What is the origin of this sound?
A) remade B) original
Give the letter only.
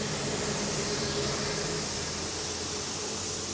B